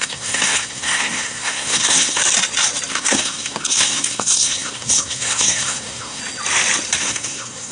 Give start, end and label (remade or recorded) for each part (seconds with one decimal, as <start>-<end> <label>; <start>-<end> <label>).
0.0-2.2 remade; 2.2-2.9 recorded; 2.9-6.2 remade; 6.2-7.0 recorded; 7.0-7.7 remade